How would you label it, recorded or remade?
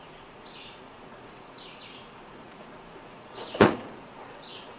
remade